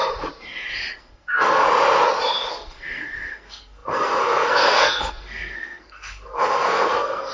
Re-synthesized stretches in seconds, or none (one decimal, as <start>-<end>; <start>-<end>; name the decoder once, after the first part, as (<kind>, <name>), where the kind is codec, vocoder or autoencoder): 1.0-1.6 (codec, SNAC); 2.5-7.3